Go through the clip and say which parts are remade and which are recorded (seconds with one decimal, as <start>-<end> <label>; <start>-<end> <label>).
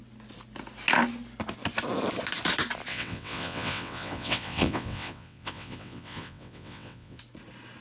0.0-2.9 recorded; 2.9-7.2 remade; 7.2-7.8 recorded